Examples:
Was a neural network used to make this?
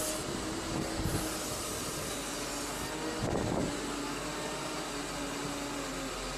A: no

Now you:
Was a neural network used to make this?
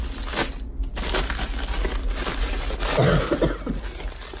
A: no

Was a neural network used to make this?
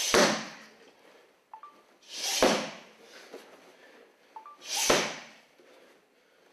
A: no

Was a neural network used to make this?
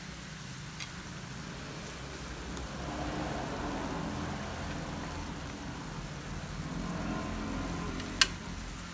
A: no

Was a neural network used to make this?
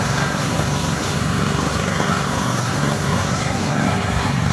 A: yes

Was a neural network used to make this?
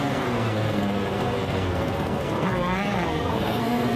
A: yes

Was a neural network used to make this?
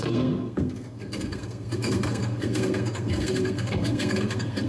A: yes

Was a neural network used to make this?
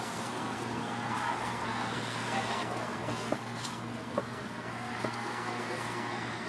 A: yes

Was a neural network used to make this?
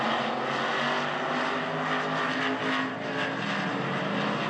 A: no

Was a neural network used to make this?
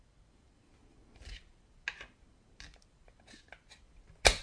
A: no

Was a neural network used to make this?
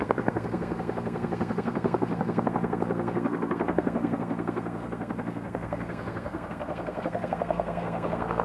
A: yes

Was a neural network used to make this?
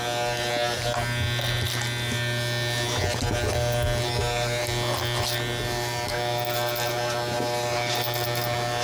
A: no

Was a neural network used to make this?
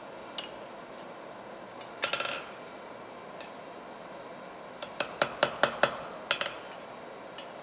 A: no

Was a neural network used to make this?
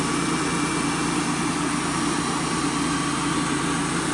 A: no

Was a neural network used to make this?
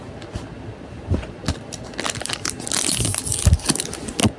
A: no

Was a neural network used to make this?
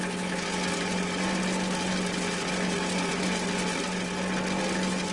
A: no